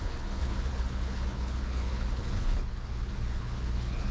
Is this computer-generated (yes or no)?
yes